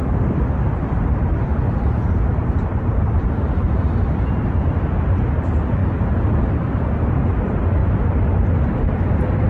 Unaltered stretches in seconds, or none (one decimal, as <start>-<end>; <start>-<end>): 0.0-9.5